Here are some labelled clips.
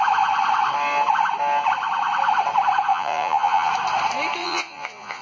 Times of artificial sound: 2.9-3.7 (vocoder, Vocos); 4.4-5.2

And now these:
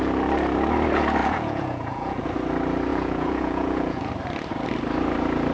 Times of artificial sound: 1.2-2.3 (vocoder, Vocos); 2.9-4.1